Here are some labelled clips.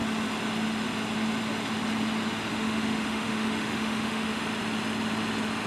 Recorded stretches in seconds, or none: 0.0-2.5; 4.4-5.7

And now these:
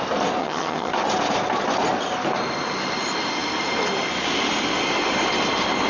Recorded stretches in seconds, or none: 0.0-0.4; 0.9-5.9

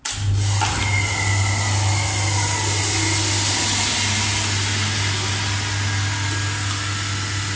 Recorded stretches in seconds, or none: 0.0-7.6

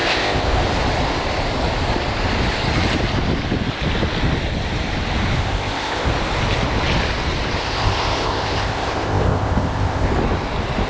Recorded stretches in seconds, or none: 0.6-5.4; 6.1-7.6; 10.1-10.9

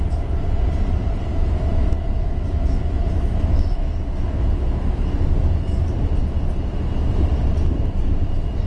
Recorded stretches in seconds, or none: 0.0-1.3; 5.9-8.7

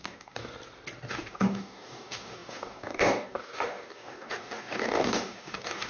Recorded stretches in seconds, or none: 0.4-1.1

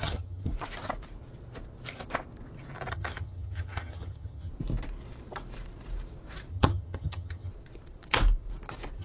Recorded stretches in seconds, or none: 0.5-2.9; 4.5-6.5; 7.5-9.0